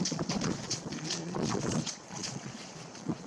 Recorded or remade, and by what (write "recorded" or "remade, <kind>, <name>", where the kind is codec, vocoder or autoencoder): remade, vocoder, Vocos